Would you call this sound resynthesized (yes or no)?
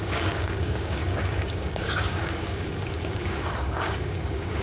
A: yes